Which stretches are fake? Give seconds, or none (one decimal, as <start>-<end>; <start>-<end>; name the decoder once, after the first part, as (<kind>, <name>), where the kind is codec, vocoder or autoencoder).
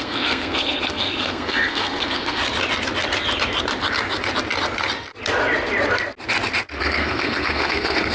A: 0.0-2.4 (codec, SNAC); 6.8-8.1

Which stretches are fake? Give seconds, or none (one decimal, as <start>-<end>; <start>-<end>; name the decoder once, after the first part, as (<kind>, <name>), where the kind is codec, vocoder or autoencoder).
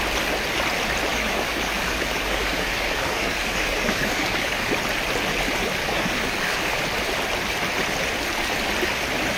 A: 1.1-4.7 (codec, DAC); 5.8-6.8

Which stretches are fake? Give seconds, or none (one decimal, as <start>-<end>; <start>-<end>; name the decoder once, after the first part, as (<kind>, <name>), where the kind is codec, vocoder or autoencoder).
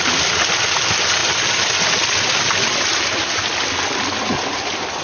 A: none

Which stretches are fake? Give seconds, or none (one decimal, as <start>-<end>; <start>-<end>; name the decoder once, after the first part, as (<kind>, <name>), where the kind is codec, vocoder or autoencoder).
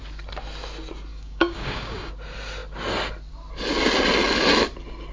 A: 1.1-2.1 (codec, DAC)